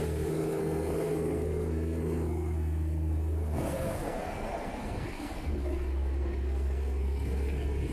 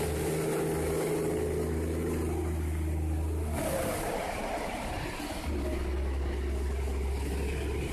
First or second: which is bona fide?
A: second